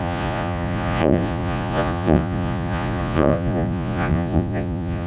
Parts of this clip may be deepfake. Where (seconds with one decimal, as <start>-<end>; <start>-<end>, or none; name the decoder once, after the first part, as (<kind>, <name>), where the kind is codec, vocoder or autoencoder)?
0.0-5.1 (vocoder, Vocos)